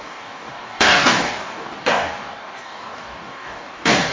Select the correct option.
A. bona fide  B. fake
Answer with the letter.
B